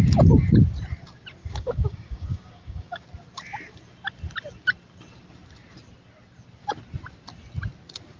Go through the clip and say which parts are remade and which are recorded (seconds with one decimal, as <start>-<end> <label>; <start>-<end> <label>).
0.0-1.4 recorded; 1.4-3.0 remade; 3.0-8.2 recorded